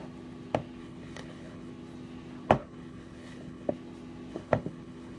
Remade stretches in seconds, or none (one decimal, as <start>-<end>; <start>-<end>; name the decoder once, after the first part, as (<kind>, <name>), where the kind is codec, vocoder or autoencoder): 0.8-1.7 (codec, HILCodec); 2.6-3.7; 4.3-5.2